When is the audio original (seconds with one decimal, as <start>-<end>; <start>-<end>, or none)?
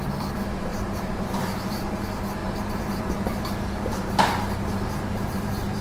0.0-0.7; 1.9-2.4